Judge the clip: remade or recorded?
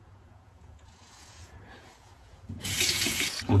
remade